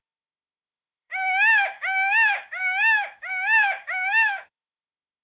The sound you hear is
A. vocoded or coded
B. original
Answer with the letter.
A